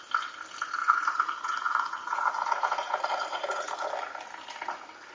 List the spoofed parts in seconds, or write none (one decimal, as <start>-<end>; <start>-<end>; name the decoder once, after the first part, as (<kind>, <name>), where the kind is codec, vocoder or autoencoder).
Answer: 0.8-3.9 (vocoder, Vocos)